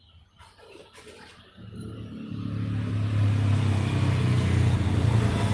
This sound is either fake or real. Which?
real